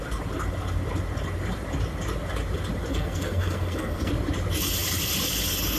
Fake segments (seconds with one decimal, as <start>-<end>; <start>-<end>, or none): 2.9-4.1